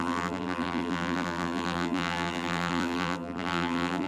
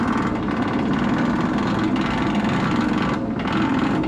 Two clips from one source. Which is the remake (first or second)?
first